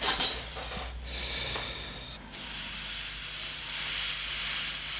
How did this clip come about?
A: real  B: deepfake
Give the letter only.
A